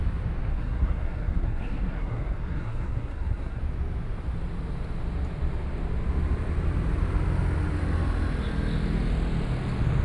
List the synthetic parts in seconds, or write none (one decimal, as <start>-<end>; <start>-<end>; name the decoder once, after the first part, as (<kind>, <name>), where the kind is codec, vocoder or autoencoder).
0.5-3.6 (codec, SNAC)